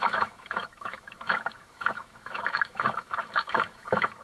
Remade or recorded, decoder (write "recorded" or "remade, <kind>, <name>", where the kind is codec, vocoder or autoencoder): remade, autoencoder, DAC-VAE